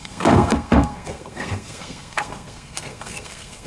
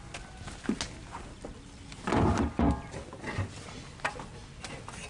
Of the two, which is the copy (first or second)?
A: first